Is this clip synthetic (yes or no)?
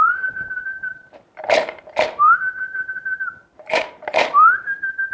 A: yes